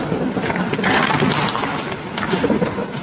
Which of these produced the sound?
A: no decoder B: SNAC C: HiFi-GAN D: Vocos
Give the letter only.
A